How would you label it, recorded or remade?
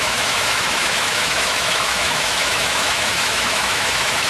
remade